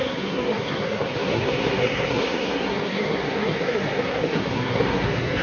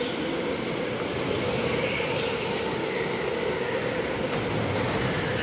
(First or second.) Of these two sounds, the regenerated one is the first